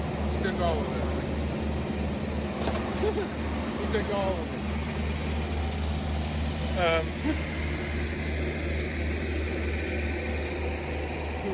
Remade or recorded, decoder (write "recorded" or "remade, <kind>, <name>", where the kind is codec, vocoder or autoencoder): recorded